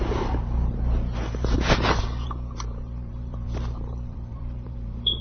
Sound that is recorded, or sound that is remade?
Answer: remade